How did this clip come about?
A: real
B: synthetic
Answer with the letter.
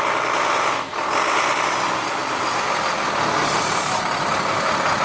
A